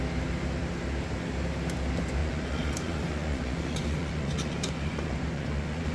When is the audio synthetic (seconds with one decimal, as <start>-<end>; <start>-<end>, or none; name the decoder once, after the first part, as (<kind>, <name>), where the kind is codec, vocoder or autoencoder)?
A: 2.2-5.9 (vocoder, Vocos)